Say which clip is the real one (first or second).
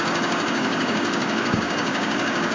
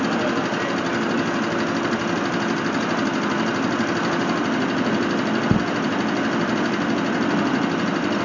second